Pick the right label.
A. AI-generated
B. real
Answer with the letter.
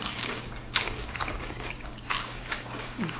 A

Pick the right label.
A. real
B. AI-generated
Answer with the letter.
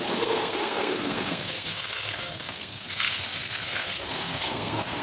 B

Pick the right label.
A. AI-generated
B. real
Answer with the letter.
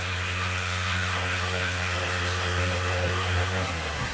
A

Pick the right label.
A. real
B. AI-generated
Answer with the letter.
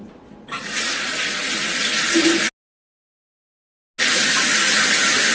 A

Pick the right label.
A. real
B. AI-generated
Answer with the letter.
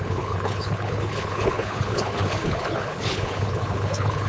B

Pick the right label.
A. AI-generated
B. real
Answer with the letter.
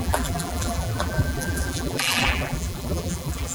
A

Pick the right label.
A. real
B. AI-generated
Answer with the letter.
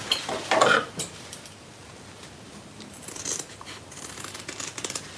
B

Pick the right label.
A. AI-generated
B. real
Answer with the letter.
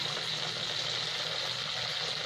B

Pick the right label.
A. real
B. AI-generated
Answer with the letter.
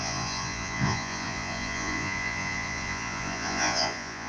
B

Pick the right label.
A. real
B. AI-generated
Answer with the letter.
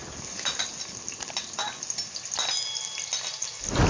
A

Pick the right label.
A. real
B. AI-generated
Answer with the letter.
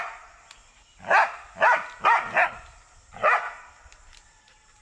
A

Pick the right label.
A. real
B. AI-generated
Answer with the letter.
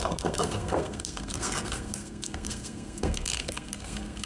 B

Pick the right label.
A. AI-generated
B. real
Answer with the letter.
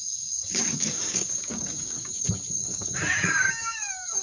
A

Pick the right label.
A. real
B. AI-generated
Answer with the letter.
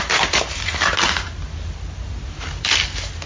A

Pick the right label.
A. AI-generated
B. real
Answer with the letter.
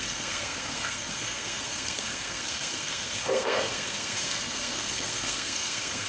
A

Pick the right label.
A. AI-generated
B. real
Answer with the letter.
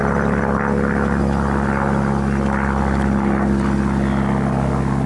B